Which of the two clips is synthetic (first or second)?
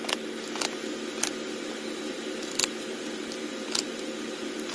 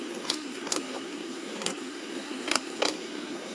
second